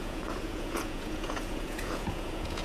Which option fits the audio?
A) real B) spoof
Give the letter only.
B